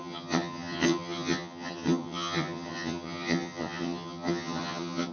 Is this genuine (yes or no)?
no